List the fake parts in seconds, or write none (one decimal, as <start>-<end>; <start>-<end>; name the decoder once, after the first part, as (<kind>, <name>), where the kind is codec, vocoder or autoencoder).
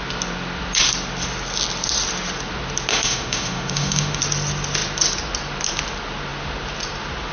2.9-4.2 (autoencoder, DAC-VAE)